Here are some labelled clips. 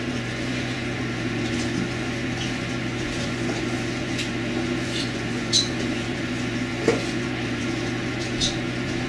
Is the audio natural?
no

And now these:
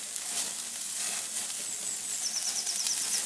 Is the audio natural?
yes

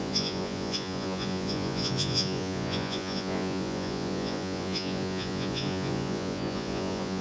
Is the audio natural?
no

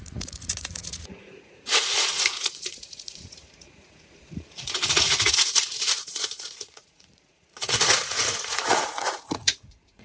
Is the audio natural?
no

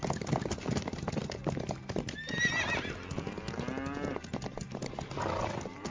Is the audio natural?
yes